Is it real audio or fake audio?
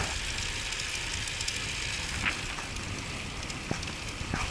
real